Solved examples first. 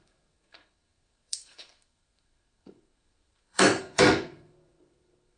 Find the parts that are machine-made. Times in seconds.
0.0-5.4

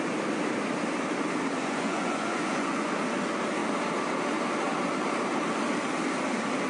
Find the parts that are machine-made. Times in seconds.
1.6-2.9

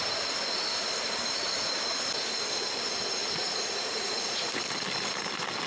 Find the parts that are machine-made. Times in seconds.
3.2-4.6

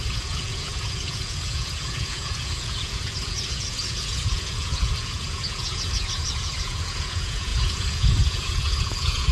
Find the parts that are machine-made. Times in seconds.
0.0-9.3

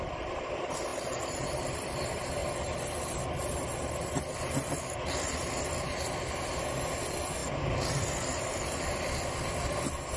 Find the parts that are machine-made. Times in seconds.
none

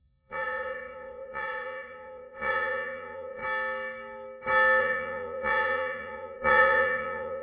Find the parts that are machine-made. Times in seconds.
0.0-3.4; 4.8-7.4